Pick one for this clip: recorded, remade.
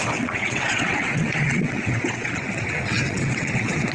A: remade